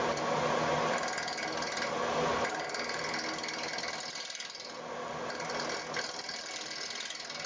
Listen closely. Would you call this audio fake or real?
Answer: real